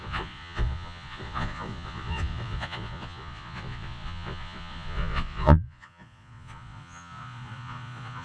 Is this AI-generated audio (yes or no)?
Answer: yes